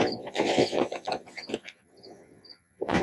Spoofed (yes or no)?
yes